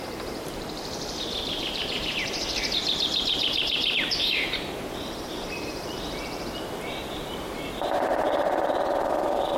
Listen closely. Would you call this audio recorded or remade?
remade